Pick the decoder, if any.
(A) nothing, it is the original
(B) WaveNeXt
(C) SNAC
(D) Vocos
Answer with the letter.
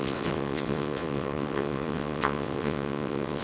B